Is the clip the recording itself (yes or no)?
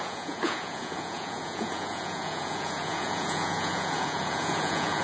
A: no